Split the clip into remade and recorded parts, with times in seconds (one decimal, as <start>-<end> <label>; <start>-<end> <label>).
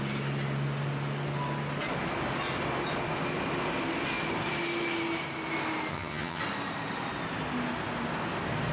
0.0-5.9 recorded; 5.9-6.4 remade; 6.4-8.7 recorded